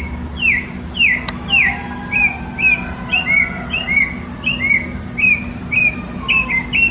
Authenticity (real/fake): real